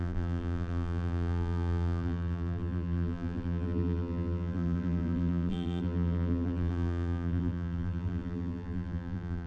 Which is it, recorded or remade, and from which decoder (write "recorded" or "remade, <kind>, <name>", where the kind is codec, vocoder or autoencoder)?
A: remade, vocoder, BigVGAN v2